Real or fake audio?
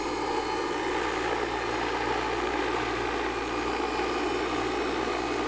real